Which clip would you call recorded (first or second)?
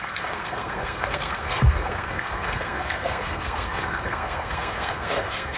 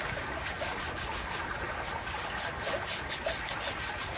second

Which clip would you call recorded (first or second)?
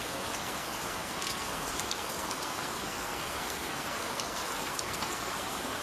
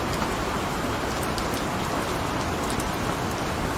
second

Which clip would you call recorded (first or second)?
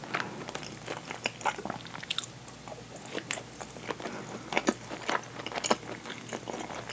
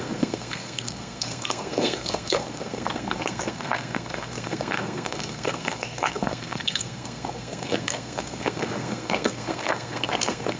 first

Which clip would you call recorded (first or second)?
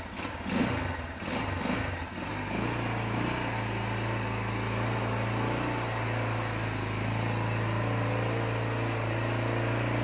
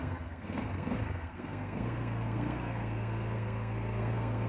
first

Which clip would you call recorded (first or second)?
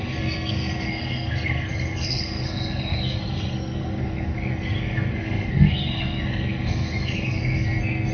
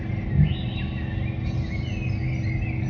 second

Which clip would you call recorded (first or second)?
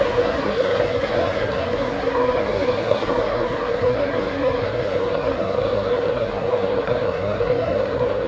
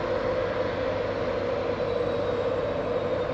second